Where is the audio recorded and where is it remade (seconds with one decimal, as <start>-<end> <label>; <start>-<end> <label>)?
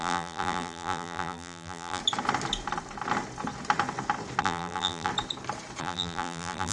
0.0-2.0 remade; 2.0-4.4 recorded; 4.4-5.1 remade; 5.1-5.8 recorded; 5.8-6.7 remade